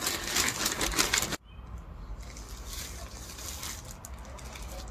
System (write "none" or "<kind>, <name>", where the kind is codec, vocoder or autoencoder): none